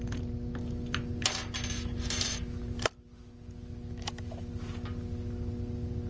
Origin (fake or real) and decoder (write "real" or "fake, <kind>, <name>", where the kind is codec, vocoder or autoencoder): real